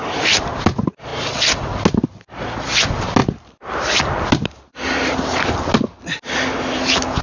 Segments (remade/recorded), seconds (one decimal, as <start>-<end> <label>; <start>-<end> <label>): 0.0-7.2 recorded